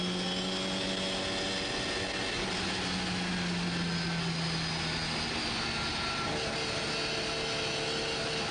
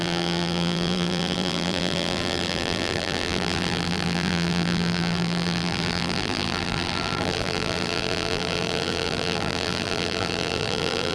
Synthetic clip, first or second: second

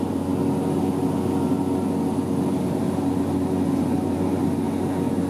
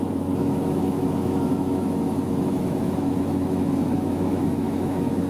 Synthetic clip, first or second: second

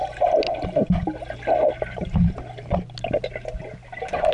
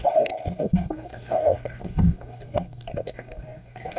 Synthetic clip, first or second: second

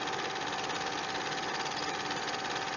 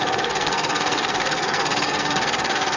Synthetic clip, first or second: second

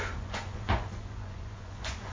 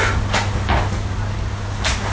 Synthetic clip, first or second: first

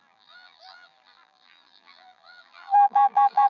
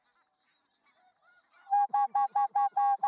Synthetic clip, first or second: first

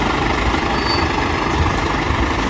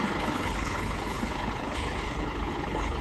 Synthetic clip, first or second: second